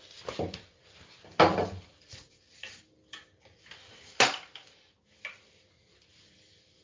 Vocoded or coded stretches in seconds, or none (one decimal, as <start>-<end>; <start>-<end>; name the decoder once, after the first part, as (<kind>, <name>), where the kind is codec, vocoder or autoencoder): none